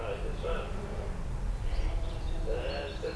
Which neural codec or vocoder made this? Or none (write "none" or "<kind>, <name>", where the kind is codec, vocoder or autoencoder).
none